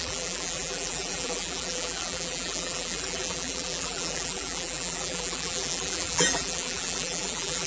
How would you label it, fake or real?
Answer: fake